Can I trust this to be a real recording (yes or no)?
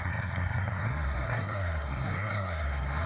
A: no